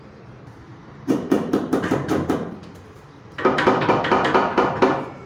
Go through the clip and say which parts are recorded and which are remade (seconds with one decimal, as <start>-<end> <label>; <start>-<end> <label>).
0.0-0.7 recorded; 0.7-2.1 remade; 2.1-5.3 recorded